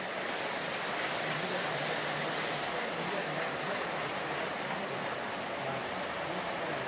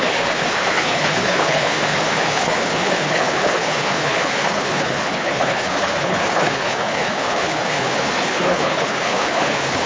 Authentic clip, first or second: first